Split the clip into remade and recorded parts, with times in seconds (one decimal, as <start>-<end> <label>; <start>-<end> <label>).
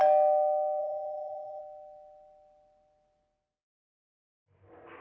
0.0-0.8 recorded; 0.8-1.6 remade; 1.6-5.0 recorded